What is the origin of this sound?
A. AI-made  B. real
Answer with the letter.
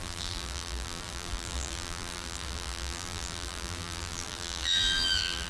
A